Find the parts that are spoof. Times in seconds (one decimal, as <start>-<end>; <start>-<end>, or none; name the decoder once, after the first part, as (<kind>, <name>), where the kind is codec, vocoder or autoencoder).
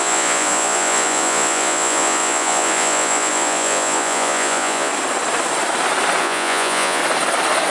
0.0-4.9 (vocoder, Vocos); 6.2-7.0